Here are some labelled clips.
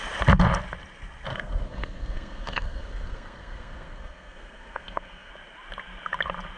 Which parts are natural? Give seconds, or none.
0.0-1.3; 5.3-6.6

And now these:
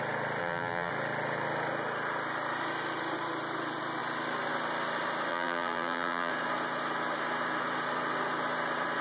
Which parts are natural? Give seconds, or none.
0.0-0.4; 0.9-5.3; 6.3-9.0